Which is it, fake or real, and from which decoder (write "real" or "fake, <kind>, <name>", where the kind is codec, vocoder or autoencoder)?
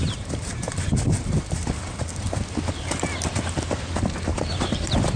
fake, vocoder, BigVGAN v2